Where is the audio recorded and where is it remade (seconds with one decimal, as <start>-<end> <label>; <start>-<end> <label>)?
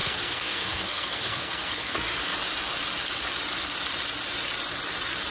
0.0-2.3 remade; 2.3-5.3 recorded